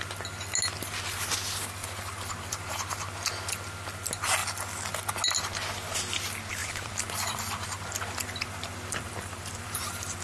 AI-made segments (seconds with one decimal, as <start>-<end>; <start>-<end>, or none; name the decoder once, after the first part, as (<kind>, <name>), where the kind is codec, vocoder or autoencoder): 1.8-2.7 (vocoder, BigVGAN v2); 6.6-10.2